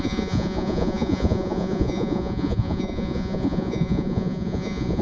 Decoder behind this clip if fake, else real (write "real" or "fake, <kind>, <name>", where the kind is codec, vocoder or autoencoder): fake, vocoder, Vocos